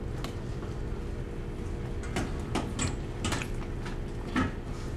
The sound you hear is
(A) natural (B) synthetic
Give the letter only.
A